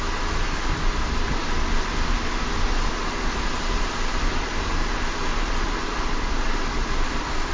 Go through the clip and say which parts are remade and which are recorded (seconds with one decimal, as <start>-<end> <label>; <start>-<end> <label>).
0.0-7.5 recorded